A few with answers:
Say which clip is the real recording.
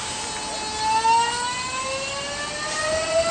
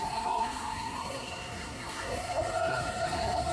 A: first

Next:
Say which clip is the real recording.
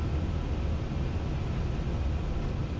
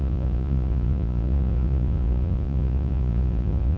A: first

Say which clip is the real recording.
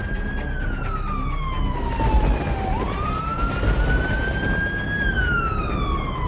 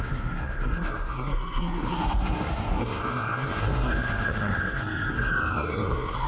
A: first